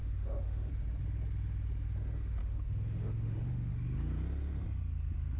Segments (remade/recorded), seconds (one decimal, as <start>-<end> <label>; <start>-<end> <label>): 0.0-0.7 remade; 0.7-2.4 recorded; 2.4-3.7 remade; 3.7-5.4 recorded